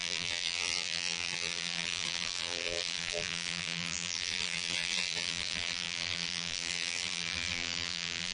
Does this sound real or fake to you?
fake